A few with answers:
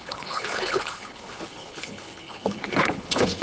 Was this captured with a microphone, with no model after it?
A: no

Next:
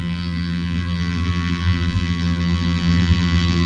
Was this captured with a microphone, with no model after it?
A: no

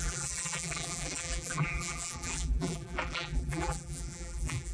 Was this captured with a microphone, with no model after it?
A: no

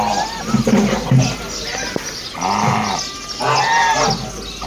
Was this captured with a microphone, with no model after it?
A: yes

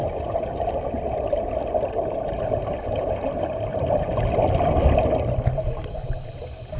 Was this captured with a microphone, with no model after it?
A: yes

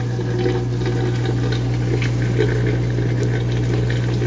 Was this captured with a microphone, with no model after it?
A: yes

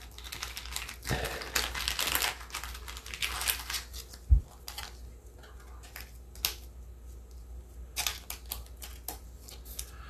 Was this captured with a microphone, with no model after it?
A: yes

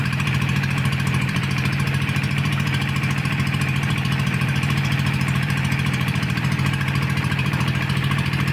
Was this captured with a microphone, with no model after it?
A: no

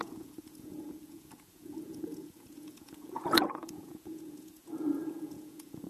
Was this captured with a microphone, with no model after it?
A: no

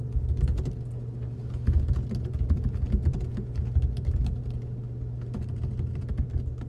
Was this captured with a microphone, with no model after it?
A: yes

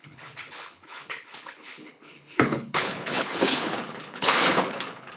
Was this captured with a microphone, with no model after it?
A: no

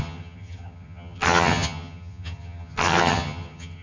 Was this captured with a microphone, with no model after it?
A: no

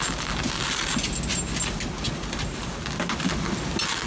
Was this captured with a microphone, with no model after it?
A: yes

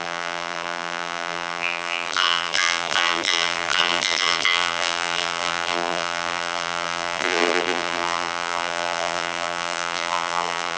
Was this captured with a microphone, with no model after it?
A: no